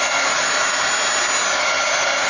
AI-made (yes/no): no